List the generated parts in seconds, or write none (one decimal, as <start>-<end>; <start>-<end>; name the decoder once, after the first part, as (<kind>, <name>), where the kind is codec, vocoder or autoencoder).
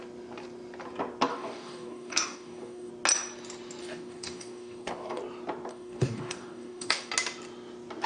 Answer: 1.3-2.9 (codec, DAC); 3.8-5.2; 5.7-7.1